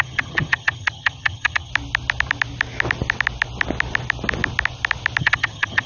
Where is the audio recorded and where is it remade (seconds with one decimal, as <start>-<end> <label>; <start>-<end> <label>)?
0.0-1.7 remade; 1.7-5.2 recorded; 5.2-5.9 remade